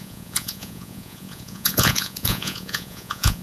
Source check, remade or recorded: remade